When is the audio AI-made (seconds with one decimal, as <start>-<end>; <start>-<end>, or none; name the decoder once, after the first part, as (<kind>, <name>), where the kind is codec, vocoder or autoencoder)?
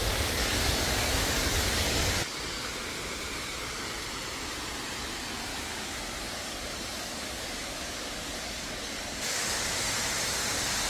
0.0-2.6 (codec, DAC); 3.3-3.8; 5.5-9.9